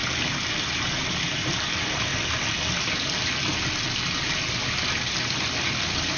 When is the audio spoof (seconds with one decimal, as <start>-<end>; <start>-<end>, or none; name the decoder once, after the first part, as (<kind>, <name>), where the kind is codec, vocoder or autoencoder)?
1.7-2.1 (vocoder, BigVGAN v2); 5.8-6.2